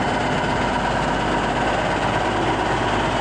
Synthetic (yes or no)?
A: no